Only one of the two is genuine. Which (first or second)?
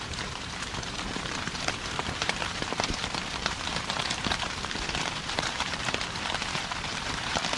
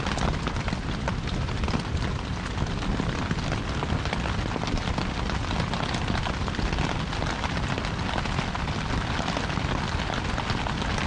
second